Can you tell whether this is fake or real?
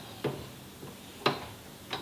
real